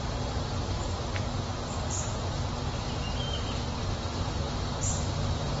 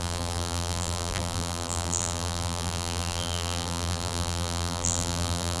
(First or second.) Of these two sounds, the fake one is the second